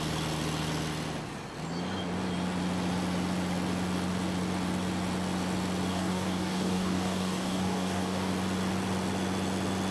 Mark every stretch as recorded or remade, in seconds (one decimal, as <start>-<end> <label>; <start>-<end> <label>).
0.0-5.9 recorded; 5.9-8.3 remade; 8.3-9.9 recorded